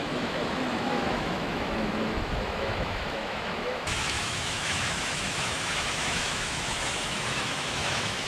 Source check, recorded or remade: remade